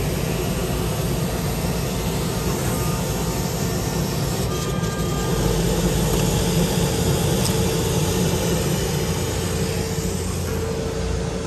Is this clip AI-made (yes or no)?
no